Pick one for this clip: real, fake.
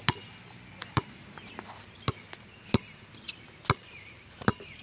real